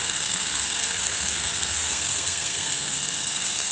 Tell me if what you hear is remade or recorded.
remade